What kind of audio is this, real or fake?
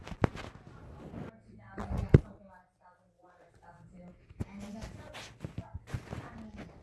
real